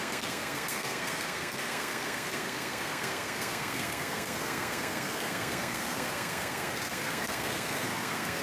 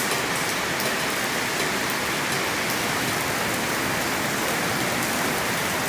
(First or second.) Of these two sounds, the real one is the second